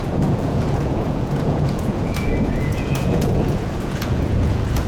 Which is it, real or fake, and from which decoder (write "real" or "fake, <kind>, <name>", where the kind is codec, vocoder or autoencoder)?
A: fake, vocoder, Vocos